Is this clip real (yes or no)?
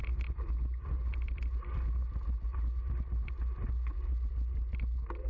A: yes